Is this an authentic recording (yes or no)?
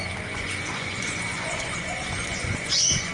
no